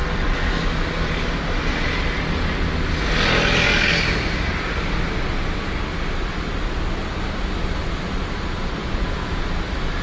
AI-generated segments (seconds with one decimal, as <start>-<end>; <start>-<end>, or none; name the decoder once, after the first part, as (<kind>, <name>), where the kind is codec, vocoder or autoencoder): 8.8-9.4 (vocoder, Vocos)